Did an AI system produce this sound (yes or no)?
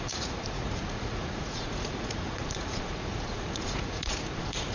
yes